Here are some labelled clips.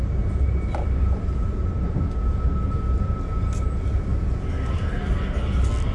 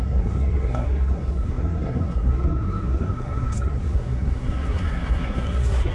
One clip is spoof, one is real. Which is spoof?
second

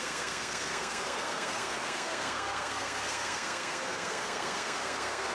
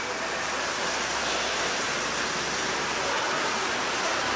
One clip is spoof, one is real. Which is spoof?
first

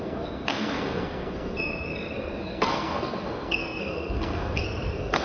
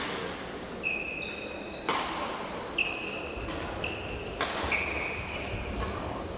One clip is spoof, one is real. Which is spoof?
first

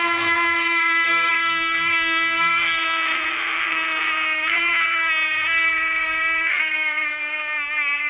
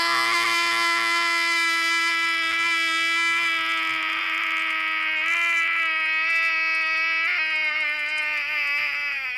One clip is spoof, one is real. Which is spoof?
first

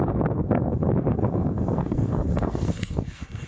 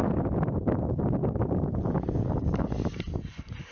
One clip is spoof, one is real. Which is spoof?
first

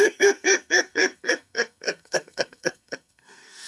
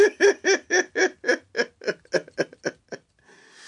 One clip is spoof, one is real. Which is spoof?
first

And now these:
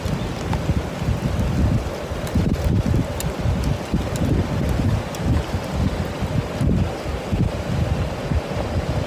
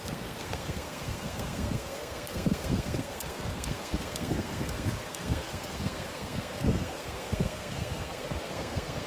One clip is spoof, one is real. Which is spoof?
second